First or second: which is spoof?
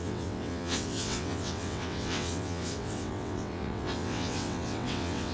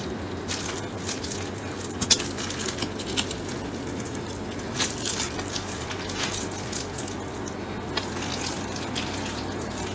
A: first